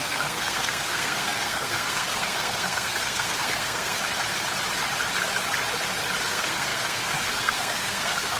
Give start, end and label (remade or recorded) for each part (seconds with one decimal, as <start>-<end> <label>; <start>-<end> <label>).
0.0-4.0 remade; 4.0-6.3 recorded; 6.3-8.4 remade